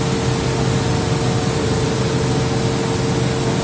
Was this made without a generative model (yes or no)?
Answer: yes